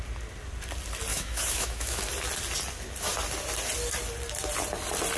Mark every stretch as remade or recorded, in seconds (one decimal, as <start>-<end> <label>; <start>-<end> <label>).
0.0-1.1 recorded; 1.1-2.0 remade; 2.0-5.2 recorded

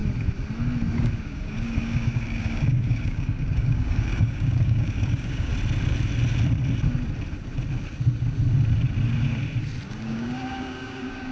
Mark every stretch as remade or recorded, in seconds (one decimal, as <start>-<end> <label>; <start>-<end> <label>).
0.0-1.2 recorded; 1.2-5.5 remade; 5.5-9.9 recorded; 9.9-11.3 remade

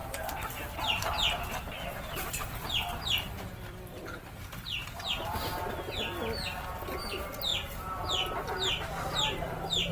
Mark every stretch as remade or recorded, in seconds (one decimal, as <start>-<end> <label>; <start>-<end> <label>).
0.0-4.8 remade; 4.8-7.0 recorded; 7.0-7.5 remade; 7.5-9.9 recorded

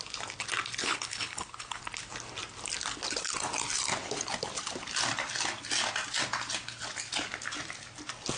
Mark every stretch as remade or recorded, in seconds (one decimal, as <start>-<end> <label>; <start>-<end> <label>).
0.0-0.8 recorded; 0.8-1.8 remade; 1.8-8.4 recorded

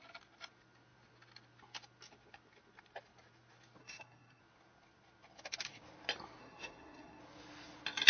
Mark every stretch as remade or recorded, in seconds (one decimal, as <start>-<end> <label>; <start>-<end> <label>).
0.0-3.8 recorded; 3.8-4.4 remade; 4.4-6.4 recorded; 6.4-7.2 remade; 7.2-8.1 recorded

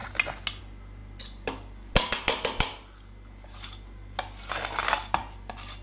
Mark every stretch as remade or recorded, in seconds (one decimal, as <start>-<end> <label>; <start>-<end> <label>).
0.0-5.8 recorded